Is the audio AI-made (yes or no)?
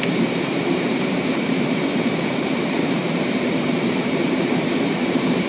yes